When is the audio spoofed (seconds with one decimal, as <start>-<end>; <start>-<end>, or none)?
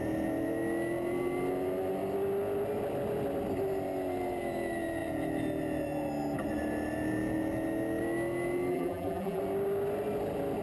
8.7-9.4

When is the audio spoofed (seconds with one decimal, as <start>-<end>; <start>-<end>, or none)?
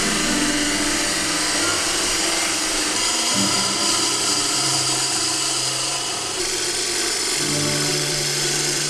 1.7-6.4; 7.9-8.9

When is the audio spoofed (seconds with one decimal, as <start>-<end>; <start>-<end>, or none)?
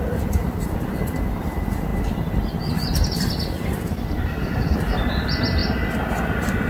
0.0-1.9; 4.4-5.6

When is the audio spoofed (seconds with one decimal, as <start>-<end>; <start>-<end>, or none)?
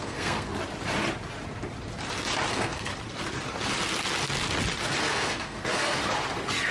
0.0-0.6; 2.5-2.9; 5.0-6.0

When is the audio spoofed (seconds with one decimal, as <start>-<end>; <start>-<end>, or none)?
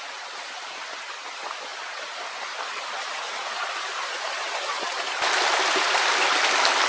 none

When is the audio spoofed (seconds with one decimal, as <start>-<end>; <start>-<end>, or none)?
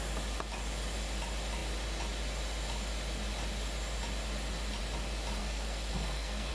5.4-6.5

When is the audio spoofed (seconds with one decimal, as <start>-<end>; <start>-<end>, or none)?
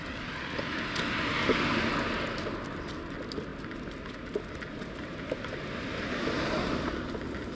none